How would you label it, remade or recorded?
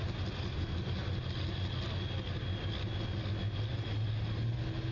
recorded